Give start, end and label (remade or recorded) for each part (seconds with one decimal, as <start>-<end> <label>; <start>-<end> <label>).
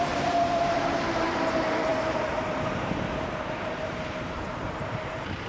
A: 0.0-5.5 remade